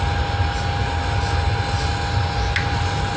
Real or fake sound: real